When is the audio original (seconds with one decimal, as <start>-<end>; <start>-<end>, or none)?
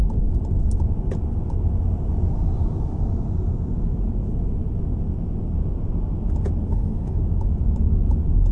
0.0-6.7; 7.2-8.5